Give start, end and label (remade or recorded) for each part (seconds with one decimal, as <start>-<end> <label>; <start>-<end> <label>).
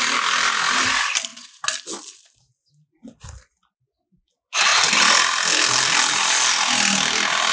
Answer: 0.0-7.5 recorded